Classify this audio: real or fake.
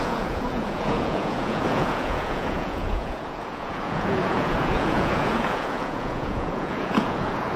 fake